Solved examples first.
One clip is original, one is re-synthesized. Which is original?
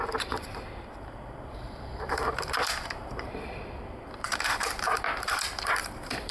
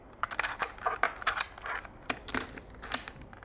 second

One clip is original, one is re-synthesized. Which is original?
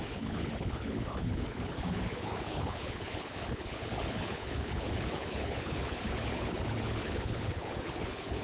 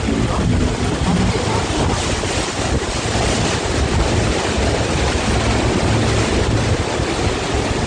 second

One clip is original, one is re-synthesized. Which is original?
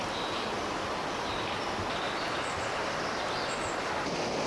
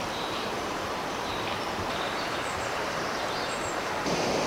first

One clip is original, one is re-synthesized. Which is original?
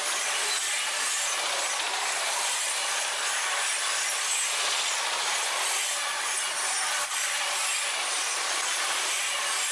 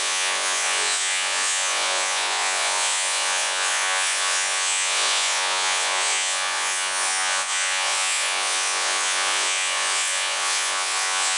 first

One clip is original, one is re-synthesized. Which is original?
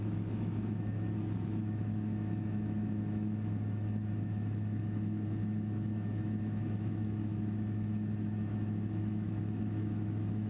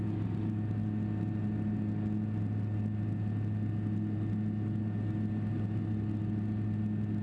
second